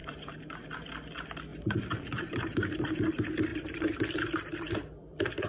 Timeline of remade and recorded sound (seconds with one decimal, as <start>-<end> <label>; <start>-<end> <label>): 0.0-0.7 remade; 0.7-1.5 recorded; 1.5-3.0 remade; 3.0-3.5 recorded; 3.5-4.1 remade; 4.1-5.5 recorded